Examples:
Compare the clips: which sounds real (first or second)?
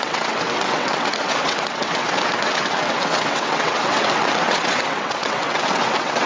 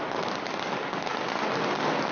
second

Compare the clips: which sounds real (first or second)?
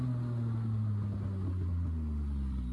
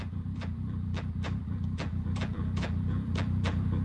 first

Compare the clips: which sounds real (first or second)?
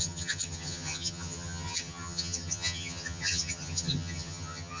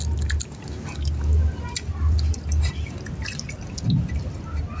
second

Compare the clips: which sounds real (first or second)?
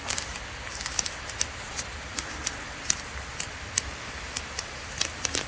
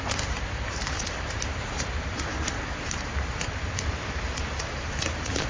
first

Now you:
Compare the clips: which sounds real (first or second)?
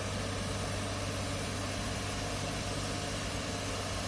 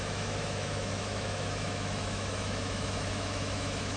first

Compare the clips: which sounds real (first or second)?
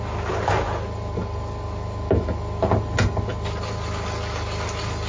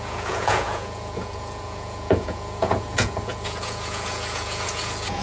first